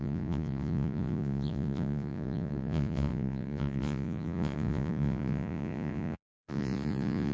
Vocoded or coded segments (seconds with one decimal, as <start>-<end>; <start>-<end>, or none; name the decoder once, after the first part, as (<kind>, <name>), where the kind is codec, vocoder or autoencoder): 0.0-7.3 (vocoder, Vocos)